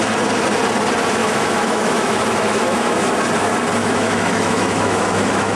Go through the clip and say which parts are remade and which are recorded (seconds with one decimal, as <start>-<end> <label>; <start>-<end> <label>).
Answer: 0.0-1.2 recorded; 1.2-3.1 remade; 3.1-3.8 recorded; 3.8-5.6 remade